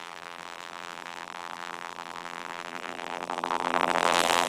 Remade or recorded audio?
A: remade